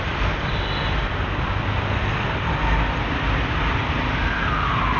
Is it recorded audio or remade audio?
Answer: recorded